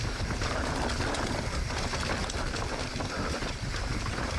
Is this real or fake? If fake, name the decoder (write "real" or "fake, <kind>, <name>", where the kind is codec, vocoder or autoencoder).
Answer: real